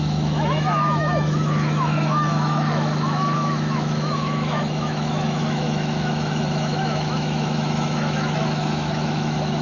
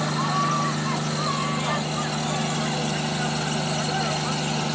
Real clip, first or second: second